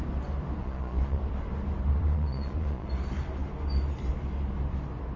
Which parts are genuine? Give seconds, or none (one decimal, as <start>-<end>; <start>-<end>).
0.0-0.6; 1.2-1.9; 2.9-5.2